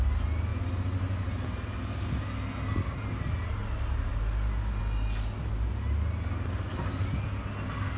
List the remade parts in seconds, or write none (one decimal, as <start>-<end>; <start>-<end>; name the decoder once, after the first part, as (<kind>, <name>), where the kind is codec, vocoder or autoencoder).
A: none